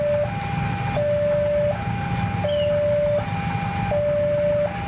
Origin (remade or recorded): recorded